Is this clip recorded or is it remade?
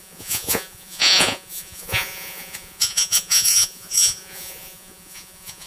remade